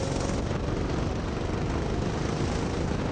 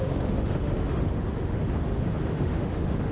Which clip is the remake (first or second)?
second